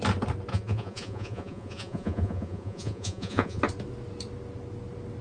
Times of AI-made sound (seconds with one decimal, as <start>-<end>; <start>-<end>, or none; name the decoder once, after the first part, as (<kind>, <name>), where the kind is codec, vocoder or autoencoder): 0.5-3.6 (vocoder, Vocos)